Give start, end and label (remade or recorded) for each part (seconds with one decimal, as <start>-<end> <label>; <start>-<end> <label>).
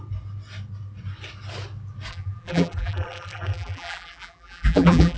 0.0-2.1 recorded; 2.1-5.2 remade